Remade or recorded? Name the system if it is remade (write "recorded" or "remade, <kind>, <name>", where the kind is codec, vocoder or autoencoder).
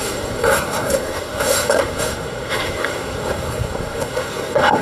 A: remade, codec, SNAC